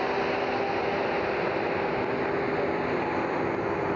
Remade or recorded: recorded